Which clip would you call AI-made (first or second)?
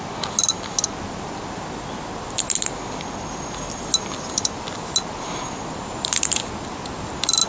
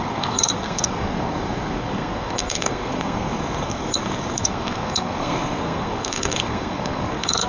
second